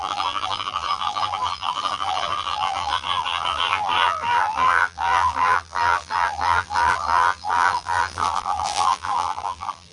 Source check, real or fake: fake